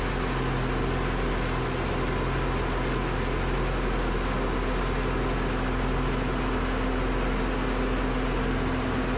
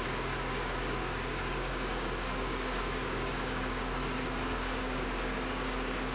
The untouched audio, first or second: first